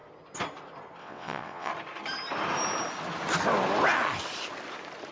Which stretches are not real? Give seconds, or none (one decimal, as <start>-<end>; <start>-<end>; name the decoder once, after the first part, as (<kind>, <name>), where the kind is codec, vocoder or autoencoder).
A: 1.0-1.7 (vocoder, WaveNeXt)